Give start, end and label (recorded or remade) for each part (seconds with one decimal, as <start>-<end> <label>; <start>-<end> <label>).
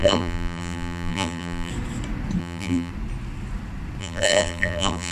0.0-1.7 remade; 1.7-2.4 recorded; 2.4-2.9 remade; 2.9-4.0 recorded; 4.0-5.1 remade